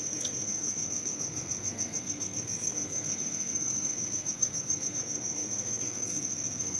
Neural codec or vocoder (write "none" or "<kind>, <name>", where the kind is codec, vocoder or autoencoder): codec, SNAC